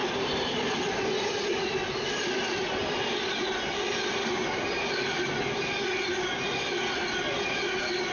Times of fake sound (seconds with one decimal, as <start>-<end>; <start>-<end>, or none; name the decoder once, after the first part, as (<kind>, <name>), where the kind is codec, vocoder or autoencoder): none